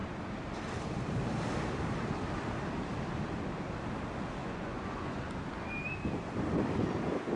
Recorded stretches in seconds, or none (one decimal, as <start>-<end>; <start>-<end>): 0.0-4.4; 5.2-7.4